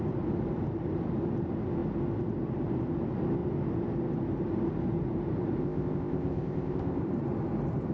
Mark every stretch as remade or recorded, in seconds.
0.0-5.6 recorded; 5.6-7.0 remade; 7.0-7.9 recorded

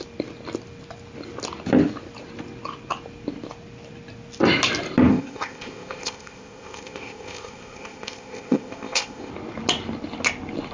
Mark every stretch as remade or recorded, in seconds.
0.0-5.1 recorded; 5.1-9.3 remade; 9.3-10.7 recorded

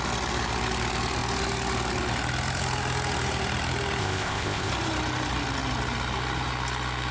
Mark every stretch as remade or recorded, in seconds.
0.0-4.0 recorded; 4.0-4.7 remade; 4.7-7.1 recorded

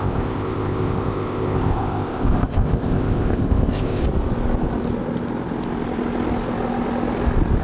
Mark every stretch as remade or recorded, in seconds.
0.0-4.0 remade; 4.0-7.6 recorded